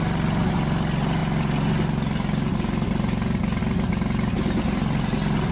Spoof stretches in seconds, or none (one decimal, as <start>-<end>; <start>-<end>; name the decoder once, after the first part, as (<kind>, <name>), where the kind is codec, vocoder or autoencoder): none